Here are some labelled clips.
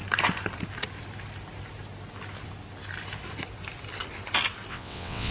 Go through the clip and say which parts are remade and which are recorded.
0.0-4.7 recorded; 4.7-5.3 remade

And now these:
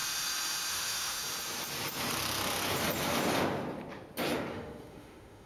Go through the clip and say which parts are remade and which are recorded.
0.0-0.7 recorded; 0.7-1.2 remade; 1.2-4.5 recorded; 4.5-5.5 remade

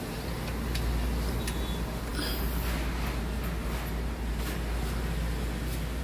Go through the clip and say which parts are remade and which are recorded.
0.0-6.0 recorded

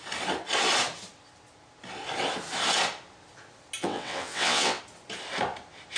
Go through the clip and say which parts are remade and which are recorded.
0.0-3.8 recorded; 3.8-4.8 remade; 4.8-6.0 recorded